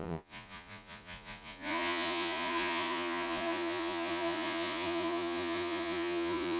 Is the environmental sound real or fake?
fake